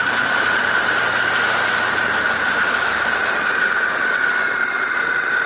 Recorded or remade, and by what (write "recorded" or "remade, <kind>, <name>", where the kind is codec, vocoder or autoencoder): remade, vocoder, BigVGAN v2